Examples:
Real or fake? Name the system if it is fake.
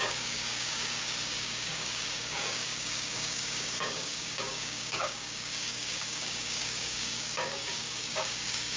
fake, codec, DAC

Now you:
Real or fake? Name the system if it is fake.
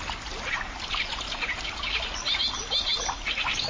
real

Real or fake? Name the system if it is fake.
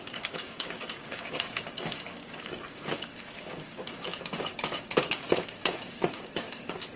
fake, codec, DAC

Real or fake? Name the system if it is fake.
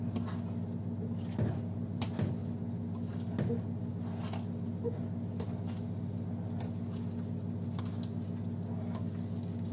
real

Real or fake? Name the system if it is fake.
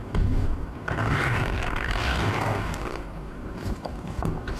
fake, codec, DAC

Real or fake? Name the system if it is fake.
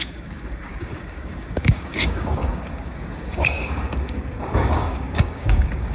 fake, codec, DAC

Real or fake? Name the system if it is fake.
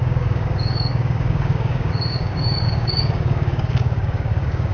fake, codec, DAC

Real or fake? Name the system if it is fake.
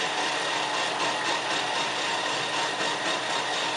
real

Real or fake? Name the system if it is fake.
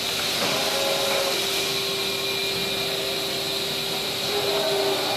real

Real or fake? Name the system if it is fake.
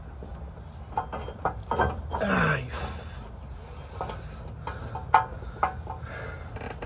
real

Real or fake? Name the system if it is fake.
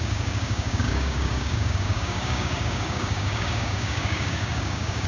fake, codec, DAC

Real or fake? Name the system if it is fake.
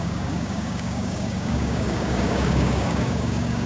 fake, codec, DAC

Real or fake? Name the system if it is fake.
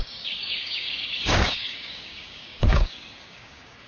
fake, codec, DAC